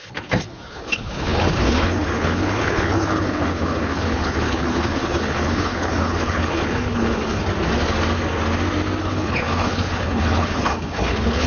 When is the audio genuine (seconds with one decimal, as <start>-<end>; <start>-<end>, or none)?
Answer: 7.4-9.0